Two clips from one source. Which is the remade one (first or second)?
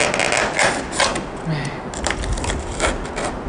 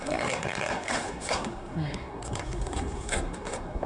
second